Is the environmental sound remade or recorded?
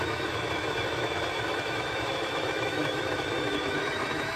remade